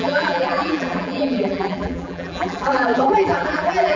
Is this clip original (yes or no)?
no